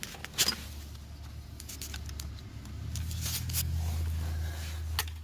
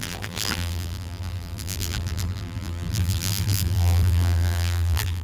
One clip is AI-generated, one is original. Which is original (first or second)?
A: first